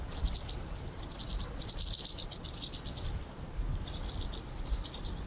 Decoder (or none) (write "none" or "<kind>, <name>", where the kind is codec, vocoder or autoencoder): none